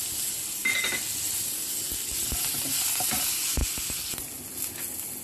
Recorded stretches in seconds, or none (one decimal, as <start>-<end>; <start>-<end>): 0.0-5.2